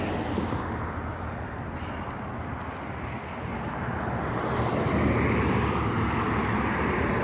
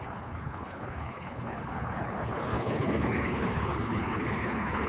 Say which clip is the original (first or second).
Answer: first